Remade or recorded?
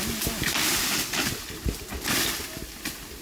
recorded